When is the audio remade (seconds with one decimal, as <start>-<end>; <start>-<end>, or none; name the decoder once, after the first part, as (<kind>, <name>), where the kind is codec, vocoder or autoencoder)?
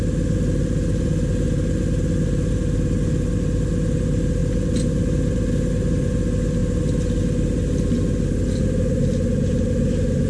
none